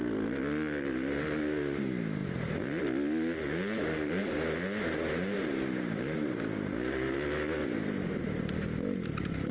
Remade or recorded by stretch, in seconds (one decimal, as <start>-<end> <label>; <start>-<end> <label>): 0.0-9.5 recorded